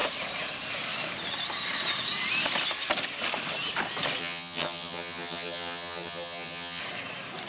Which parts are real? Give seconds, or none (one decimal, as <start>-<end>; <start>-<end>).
0.0-4.2; 6.8-7.5